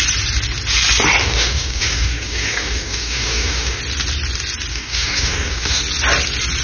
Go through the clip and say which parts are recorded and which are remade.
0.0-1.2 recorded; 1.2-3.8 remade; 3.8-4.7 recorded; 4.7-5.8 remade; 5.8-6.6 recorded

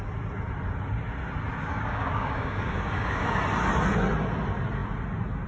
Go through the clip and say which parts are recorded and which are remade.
0.0-1.6 recorded; 1.6-3.4 remade; 3.4-5.5 recorded

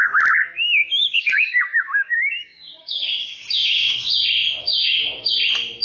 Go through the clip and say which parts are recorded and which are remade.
0.0-1.0 recorded; 1.0-4.0 remade; 4.0-4.7 recorded; 4.7-5.3 remade; 5.3-5.8 recorded

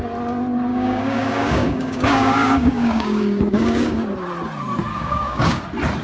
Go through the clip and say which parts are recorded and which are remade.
0.0-0.7 recorded; 0.7-4.0 remade; 4.0-4.9 recorded; 4.9-5.6 remade; 5.6-6.0 recorded

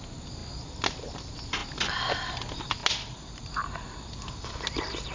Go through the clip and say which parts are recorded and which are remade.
0.0-5.1 recorded

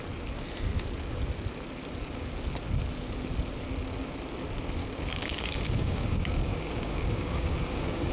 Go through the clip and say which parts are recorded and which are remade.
0.0-4.8 recorded; 4.8-8.1 remade